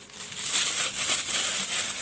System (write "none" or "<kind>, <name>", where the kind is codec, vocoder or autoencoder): none